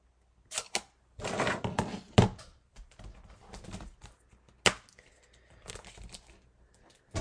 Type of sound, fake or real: real